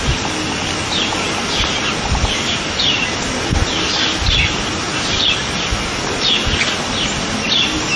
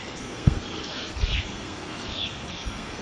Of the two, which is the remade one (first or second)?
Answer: second